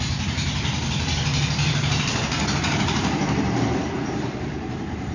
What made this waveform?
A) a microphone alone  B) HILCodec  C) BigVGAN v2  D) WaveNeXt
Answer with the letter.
C